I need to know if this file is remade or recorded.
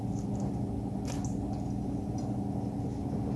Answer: recorded